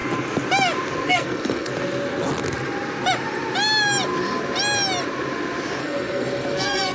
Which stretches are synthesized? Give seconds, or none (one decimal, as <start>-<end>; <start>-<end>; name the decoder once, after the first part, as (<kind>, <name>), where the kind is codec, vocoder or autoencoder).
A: 1.1-1.7 (codec, SNAC); 5.8-6.9